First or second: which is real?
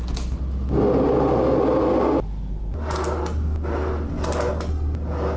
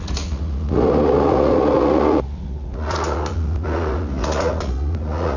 first